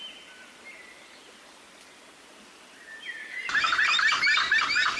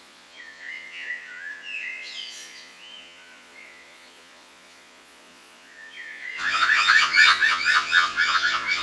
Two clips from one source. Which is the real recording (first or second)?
first